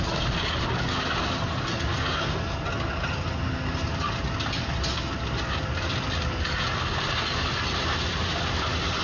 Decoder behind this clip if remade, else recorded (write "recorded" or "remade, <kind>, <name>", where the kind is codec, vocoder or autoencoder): recorded